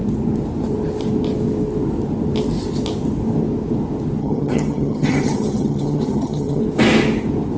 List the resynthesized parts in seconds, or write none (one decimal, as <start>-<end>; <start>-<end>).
4.2-6.6